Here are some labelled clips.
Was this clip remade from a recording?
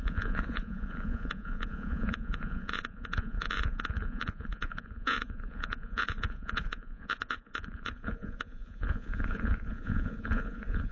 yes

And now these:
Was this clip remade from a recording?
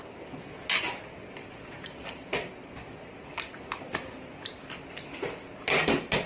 no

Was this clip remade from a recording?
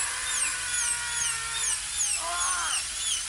no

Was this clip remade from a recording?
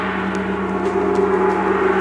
no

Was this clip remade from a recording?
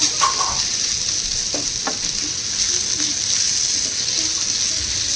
no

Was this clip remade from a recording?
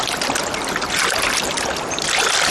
no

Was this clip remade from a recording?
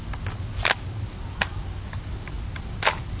no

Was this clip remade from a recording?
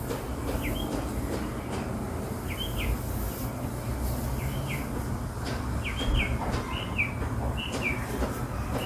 no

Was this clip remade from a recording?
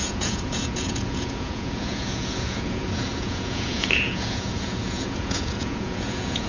yes